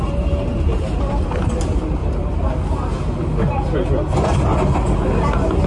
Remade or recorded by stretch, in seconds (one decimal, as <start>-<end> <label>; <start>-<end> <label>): 0.0-2.0 remade; 2.0-5.7 recorded